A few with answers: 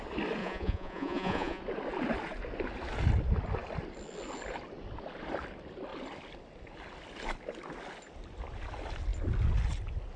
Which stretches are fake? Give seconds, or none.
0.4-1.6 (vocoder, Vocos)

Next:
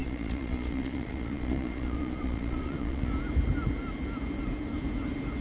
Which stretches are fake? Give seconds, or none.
0.0-3.1 (vocoder, Vocos)

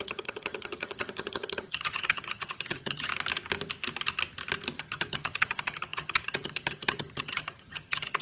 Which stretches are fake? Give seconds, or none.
0.0-3.1 (vocoder, HiFi-GAN); 4.8-8.2

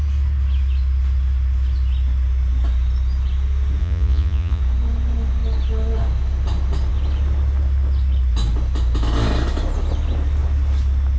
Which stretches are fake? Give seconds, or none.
3.8-4.6 (vocoder, Vocos)

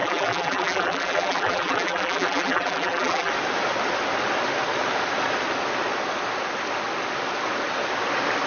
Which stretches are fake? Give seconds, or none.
0.0-3.3 (vocoder, BigVGAN v2)

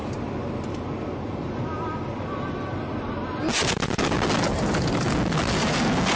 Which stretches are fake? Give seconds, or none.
none